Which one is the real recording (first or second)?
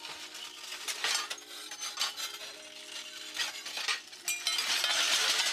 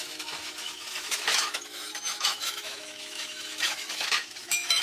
first